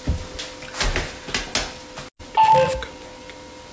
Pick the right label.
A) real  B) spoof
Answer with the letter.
A